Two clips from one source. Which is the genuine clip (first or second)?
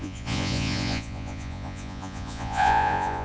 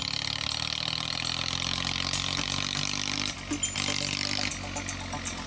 second